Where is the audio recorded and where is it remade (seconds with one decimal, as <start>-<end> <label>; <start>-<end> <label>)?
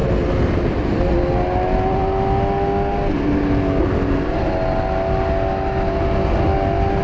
0.0-7.0 recorded